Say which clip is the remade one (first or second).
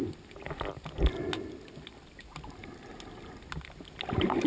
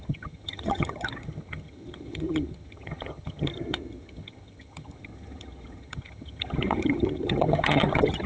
second